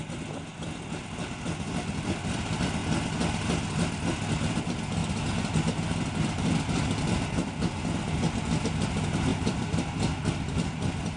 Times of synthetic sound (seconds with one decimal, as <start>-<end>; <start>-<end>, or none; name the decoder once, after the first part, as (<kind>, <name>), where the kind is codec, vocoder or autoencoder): 5.0-8.5 (vocoder, BigVGAN v2); 9.3-10.2